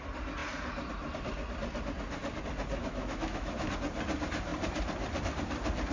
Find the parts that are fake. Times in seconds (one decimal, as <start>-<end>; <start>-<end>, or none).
2.8-3.7